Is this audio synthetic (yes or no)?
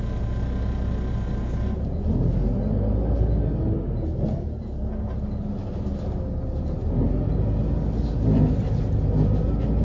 no